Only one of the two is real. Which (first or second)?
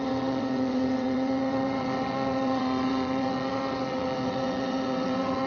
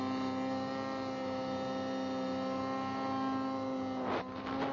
second